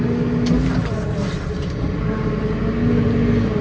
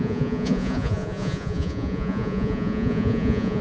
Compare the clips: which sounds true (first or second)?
first